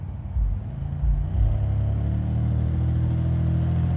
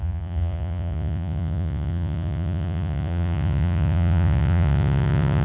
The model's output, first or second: second